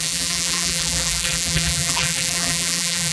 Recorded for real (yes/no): no